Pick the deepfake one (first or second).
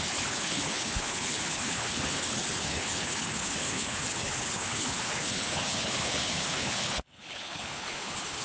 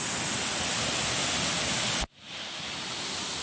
first